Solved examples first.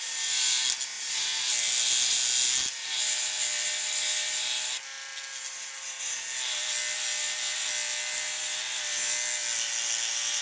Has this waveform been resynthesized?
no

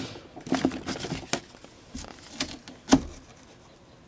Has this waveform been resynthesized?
no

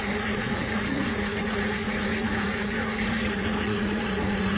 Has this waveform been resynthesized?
yes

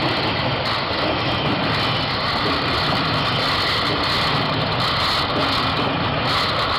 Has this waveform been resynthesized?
no